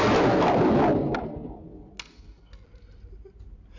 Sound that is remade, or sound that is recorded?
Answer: recorded